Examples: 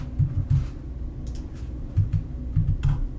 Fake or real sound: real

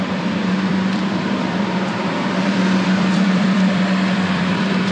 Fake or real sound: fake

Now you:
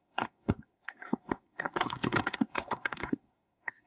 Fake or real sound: fake